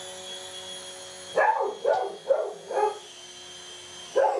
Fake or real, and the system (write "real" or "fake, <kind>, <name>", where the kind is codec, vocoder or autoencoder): real